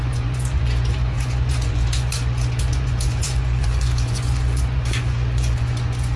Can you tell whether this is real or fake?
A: fake